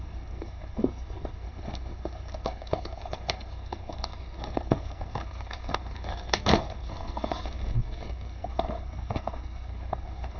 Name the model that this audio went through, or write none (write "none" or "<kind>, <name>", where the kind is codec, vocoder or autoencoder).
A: codec, SNAC